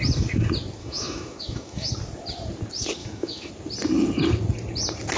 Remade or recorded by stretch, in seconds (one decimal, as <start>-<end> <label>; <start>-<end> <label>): 0.0-0.8 recorded; 0.8-1.9 remade; 1.9-3.0 recorded; 3.0-3.5 remade; 3.5-5.2 recorded